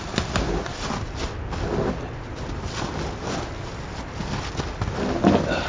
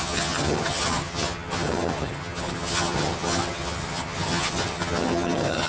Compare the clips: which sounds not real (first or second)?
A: second